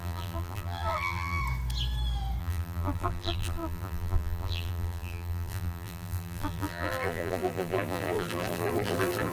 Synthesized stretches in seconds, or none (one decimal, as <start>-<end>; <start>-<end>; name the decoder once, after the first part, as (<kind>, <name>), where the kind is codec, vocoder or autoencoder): 0.0-1.4 (vocoder, BigVGAN v2); 2.4-9.3